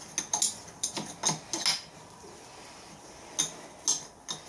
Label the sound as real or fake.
real